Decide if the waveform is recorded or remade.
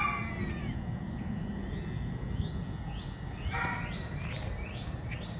recorded